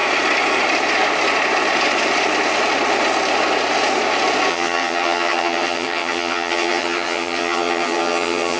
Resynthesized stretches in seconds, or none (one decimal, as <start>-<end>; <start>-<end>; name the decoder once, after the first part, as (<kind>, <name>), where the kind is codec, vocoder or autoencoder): 4.5-8.6 (vocoder, HiFi-GAN)